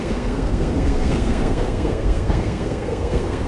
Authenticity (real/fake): fake